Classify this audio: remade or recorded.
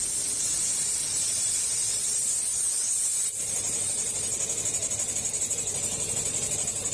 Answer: recorded